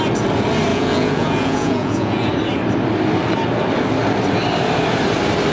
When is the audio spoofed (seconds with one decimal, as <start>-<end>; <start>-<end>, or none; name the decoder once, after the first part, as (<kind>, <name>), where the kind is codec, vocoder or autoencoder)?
0.7-2.3 (vocoder, Vocos)